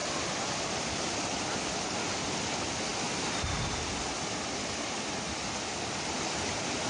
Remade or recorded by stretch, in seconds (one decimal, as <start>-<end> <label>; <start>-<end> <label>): 0.0-1.0 remade; 1.0-6.9 recorded